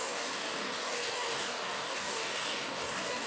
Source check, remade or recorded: remade